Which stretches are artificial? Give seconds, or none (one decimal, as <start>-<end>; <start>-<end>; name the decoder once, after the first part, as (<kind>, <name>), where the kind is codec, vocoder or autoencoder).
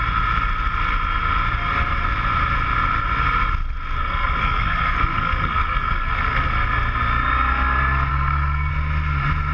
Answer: 4.0-6.5 (codec, SNAC); 8.1-8.7